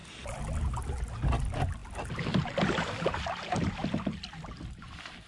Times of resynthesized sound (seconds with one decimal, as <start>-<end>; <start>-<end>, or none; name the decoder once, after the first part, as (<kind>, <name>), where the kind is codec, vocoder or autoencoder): none